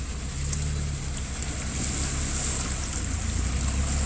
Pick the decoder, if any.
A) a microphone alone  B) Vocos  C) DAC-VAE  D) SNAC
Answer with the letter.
A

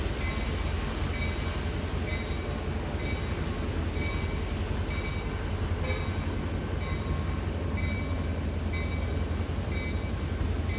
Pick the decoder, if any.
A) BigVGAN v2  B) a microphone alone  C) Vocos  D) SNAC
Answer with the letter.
B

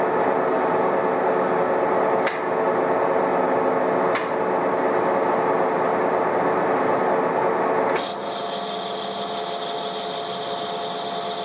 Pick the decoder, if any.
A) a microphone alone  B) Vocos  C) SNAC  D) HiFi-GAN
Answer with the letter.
A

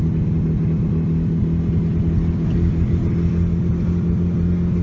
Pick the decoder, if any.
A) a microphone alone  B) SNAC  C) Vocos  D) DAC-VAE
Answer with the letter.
A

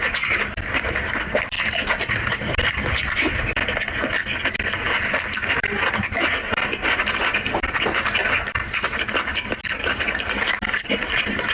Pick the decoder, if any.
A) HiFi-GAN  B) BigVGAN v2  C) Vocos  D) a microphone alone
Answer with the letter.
D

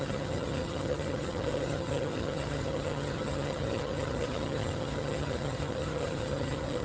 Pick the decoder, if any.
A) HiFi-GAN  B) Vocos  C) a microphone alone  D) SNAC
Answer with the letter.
A